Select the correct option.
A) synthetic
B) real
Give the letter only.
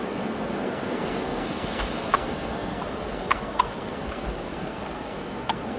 A